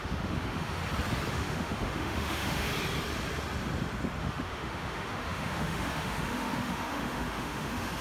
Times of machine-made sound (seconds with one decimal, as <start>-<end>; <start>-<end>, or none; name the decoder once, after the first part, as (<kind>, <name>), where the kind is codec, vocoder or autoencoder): 0.0-0.8 (autoencoder, DAC-VAE); 1.3-2.7; 4.2-8.0